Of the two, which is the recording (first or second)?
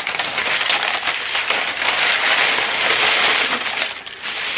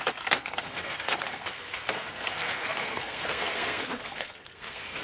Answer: first